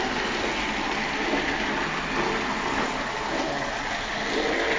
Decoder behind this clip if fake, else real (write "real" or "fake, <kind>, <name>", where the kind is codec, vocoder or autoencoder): real